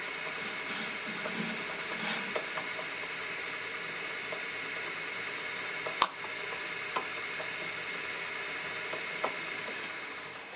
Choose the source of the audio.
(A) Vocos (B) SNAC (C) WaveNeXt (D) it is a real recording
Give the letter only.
D